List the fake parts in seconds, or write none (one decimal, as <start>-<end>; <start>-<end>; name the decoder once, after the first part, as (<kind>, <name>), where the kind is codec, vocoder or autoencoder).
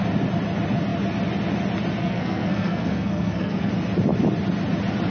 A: 2.0-3.7 (codec, SNAC)